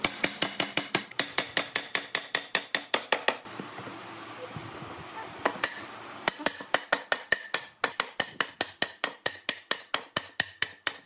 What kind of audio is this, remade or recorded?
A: recorded